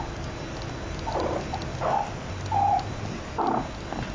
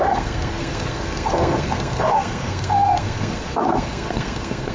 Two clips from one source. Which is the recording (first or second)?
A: first